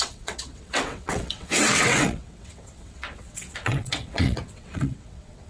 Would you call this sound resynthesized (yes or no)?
yes